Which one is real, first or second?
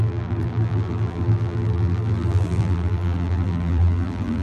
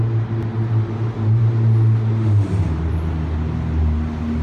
second